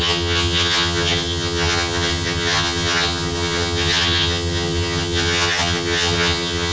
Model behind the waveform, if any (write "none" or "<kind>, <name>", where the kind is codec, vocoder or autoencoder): vocoder, HiFi-GAN